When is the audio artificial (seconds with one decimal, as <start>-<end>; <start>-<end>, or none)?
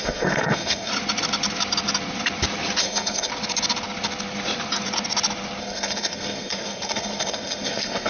0.0-0.9; 2.8-3.3; 5.6-8.1